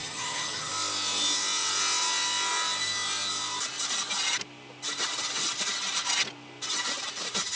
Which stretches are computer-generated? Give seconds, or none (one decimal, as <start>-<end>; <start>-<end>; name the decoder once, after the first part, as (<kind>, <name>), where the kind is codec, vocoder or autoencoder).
0.0-0.7 (vocoder, HiFi-GAN)